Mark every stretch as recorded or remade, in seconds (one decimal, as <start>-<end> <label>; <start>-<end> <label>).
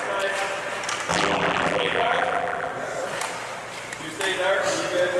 0.0-1.1 recorded; 1.1-2.7 remade; 2.7-5.2 recorded